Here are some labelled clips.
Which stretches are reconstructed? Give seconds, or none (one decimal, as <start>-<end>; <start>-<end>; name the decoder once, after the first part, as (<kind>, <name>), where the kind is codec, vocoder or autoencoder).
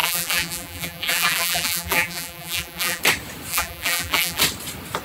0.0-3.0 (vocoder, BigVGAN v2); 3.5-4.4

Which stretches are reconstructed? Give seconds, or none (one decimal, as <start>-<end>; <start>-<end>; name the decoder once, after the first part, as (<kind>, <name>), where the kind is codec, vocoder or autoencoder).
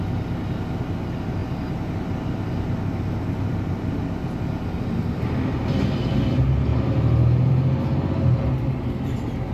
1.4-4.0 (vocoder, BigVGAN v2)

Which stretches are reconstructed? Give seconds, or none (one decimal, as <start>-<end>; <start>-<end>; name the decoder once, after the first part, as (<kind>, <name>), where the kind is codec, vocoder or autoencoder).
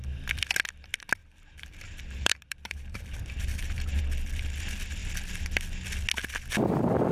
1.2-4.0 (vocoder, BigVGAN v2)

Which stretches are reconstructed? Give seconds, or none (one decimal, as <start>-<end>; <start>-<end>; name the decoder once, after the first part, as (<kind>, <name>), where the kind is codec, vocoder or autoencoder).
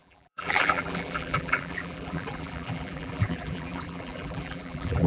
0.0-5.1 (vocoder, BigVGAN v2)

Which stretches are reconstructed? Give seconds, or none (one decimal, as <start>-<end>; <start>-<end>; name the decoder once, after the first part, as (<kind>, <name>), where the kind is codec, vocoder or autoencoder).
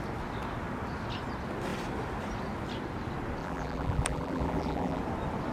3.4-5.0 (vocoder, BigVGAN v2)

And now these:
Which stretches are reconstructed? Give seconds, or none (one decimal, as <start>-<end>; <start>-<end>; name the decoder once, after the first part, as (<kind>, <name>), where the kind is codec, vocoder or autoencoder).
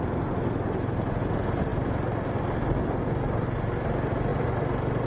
none